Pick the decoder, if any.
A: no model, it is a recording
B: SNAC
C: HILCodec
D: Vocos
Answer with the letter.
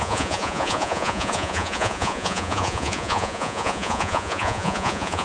D